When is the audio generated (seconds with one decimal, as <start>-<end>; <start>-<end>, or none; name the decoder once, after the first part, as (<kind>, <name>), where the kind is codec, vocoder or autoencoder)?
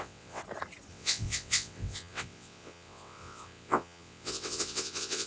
0.0-0.4 (vocoder, WaveNeXt); 0.9-5.3